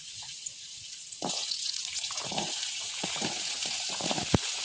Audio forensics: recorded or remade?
remade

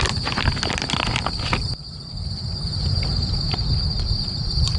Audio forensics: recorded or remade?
recorded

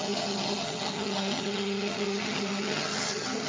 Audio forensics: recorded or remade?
remade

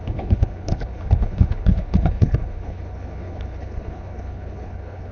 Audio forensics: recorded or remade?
remade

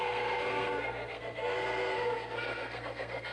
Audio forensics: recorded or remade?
remade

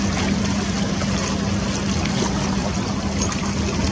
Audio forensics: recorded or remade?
recorded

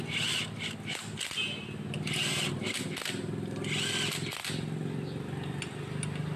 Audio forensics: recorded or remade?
recorded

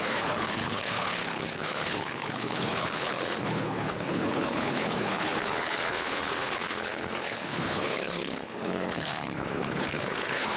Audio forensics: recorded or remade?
remade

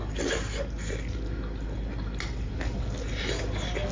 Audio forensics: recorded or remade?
recorded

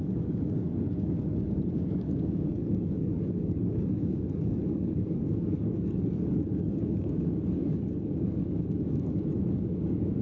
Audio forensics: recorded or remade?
remade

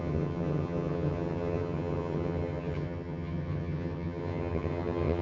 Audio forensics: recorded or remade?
remade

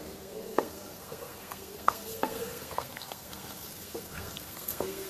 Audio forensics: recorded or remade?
remade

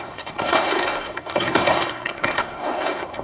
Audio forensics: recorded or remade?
remade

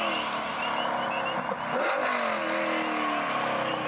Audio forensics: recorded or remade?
recorded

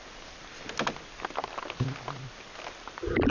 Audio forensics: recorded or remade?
recorded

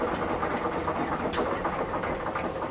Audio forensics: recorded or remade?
recorded